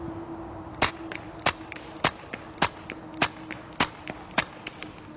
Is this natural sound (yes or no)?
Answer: yes